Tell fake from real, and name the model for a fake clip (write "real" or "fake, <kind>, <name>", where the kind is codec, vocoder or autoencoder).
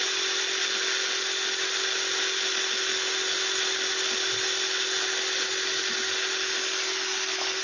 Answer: real